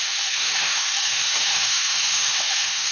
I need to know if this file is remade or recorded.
remade